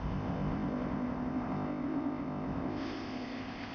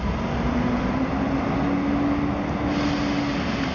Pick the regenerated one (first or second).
first